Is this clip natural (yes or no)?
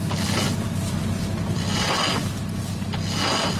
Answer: yes